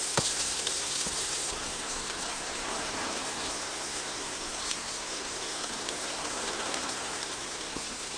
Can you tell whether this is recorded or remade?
remade